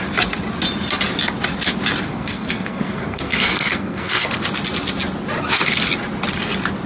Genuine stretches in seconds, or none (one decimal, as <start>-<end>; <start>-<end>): 0.0-2.1; 4.4-6.9